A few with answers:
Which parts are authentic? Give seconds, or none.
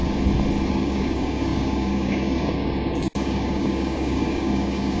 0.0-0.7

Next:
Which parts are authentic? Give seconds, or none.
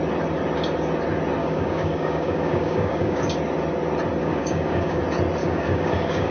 0.0-1.4; 3.3-4.2; 5.0-5.4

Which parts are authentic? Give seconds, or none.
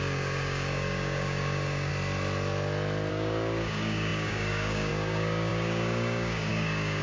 1.9-3.1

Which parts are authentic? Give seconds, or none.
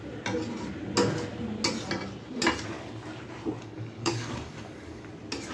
0.0-3.6; 5.1-5.5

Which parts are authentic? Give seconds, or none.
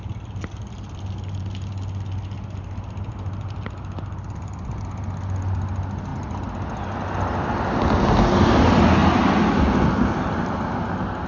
0.0-11.3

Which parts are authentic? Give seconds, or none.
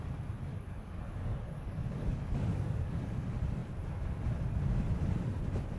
0.0-0.5; 3.1-5.8